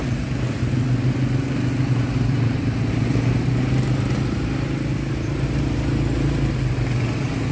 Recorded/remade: recorded